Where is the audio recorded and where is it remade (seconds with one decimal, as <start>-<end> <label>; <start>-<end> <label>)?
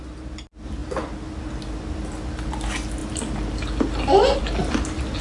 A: 0.0-5.2 recorded